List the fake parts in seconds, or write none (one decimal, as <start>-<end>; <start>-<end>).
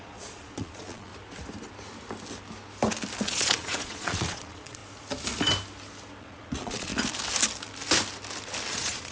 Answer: 0.0-1.1; 3.2-4.8; 6.2-6.9; 8.7-9.1